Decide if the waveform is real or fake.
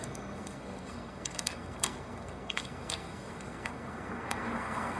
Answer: fake